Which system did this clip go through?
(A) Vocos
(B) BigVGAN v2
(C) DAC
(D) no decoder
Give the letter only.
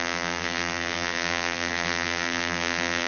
B